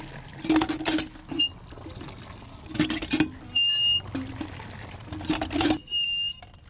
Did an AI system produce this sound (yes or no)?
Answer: no